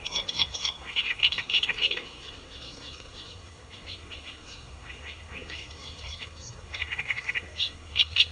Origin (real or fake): fake